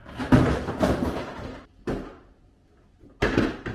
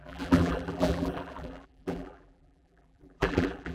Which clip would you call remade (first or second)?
second